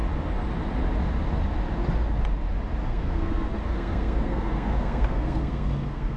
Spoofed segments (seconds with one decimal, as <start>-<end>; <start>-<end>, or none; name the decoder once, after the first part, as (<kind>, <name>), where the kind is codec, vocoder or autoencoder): 2.9-6.2 (codec, SNAC)